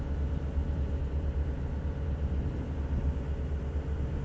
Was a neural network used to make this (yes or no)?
no